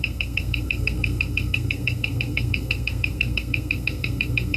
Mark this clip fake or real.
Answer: fake